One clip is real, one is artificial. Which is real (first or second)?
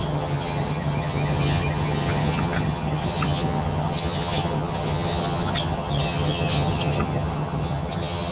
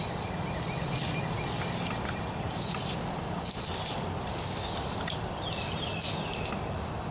second